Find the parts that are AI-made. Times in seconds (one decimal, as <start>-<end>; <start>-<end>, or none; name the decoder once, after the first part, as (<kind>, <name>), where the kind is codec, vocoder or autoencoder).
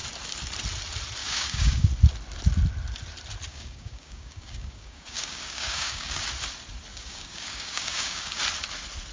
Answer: 1.2-1.9 (codec, DAC); 3.5-6.2; 6.9-8.4